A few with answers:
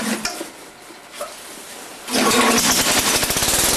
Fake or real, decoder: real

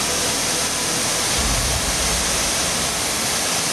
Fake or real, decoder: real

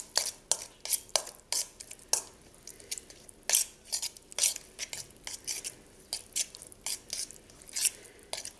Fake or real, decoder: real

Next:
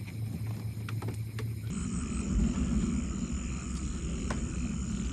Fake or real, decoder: real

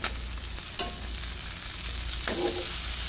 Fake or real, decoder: real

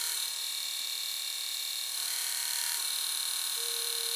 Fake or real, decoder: fake, vocoder, BigVGAN v2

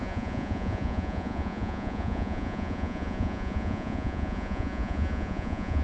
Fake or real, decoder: fake, vocoder, Vocos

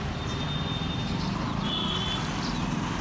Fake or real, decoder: real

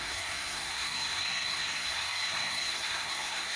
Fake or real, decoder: fake, codec, SNAC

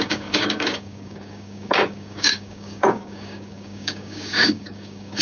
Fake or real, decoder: fake, codec, DAC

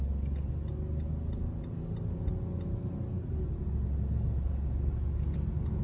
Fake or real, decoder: real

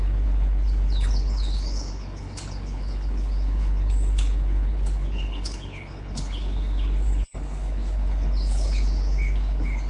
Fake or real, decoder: fake, codec, HILCodec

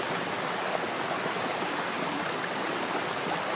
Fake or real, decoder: real